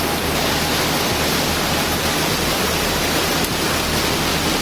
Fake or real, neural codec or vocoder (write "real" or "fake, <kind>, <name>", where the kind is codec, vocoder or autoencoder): real